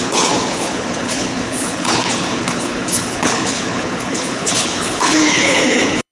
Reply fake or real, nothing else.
fake